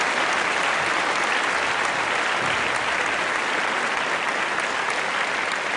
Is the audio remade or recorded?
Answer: recorded